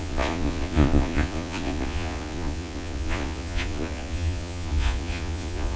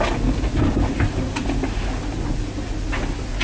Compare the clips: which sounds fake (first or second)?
first